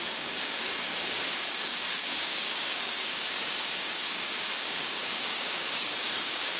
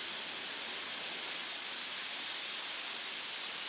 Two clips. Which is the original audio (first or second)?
second